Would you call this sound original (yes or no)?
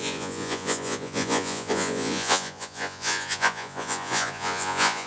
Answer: no